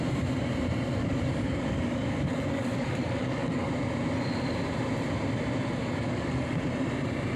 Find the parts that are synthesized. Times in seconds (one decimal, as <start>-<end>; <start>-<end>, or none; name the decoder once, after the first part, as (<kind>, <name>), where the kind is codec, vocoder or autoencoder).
1.0-3.7 (codec, DAC); 5.8-6.7